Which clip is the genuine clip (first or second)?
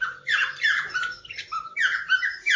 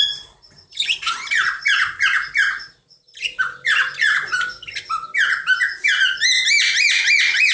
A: second